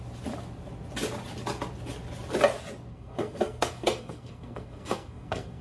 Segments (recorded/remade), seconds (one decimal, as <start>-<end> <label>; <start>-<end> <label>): 0.0-2.9 recorded; 2.9-5.6 remade